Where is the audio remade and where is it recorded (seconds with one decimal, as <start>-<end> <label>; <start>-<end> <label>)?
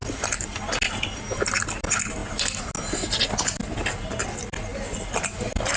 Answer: 0.0-5.8 recorded